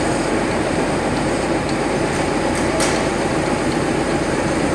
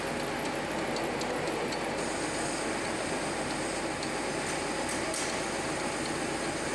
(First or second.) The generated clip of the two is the first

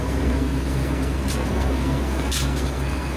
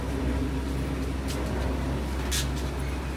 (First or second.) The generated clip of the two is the first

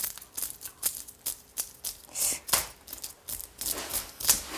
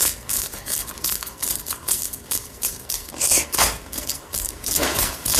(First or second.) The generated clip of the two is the second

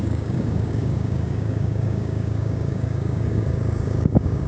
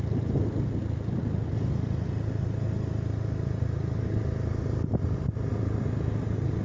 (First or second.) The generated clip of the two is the first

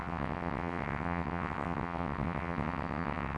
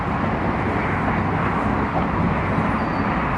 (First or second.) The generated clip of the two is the first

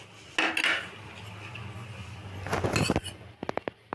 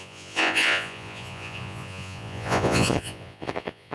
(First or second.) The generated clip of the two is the second